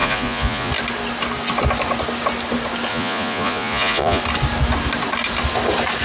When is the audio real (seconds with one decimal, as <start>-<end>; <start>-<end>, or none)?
0.7-2.9; 4.2-6.0